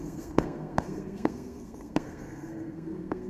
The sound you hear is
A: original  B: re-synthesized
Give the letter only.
B